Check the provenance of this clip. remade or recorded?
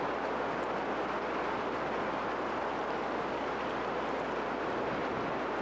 recorded